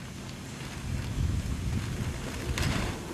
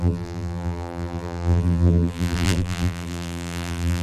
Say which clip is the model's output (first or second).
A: second